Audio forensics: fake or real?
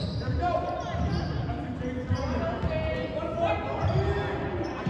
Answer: real